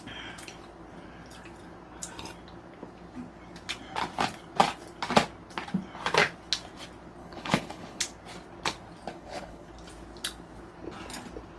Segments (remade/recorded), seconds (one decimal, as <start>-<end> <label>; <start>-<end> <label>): 0.0-7.2 recorded; 7.2-8.0 remade; 8.0-9.1 recorded; 9.1-9.7 remade; 9.7-11.6 recorded

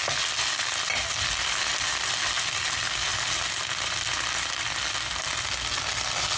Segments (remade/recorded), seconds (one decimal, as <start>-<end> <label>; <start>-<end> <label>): 0.0-6.4 recorded